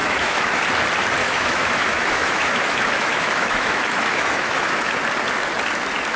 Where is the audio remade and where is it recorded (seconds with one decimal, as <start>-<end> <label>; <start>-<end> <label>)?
0.0-0.6 remade; 0.6-1.2 recorded; 1.2-4.9 remade; 4.9-6.2 recorded